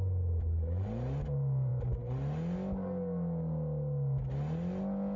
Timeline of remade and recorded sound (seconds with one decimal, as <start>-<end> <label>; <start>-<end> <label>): 0.0-5.2 recorded